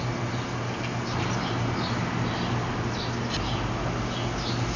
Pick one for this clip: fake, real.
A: real